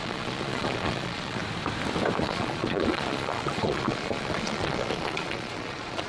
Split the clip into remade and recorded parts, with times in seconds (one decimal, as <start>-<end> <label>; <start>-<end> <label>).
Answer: 0.0-1.4 remade; 1.4-2.2 recorded; 2.2-6.1 remade